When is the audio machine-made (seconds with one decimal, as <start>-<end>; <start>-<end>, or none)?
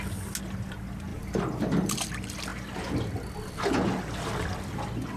1.1-2.1